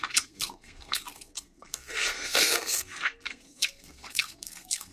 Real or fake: fake